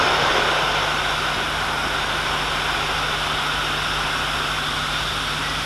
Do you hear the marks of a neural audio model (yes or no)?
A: no